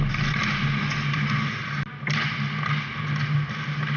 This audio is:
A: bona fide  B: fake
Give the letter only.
A